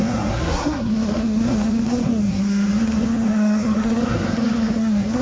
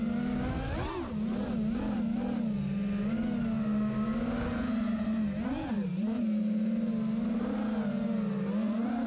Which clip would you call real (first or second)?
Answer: second